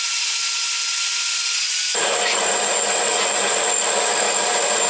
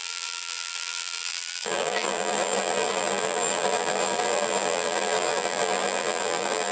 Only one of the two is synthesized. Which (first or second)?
second